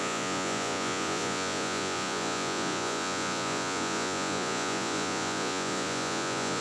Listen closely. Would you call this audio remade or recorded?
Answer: remade